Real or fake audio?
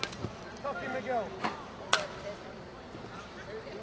real